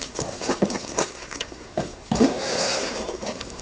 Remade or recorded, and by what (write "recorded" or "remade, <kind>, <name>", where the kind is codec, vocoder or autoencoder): remade, codec, SNAC